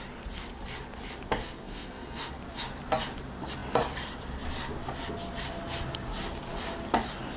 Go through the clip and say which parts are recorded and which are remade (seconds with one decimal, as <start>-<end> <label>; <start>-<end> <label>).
0.0-1.4 recorded; 1.4-2.3 remade; 2.3-7.4 recorded